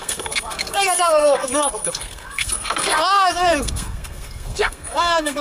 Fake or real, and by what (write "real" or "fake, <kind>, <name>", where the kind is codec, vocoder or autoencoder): fake, codec, SNAC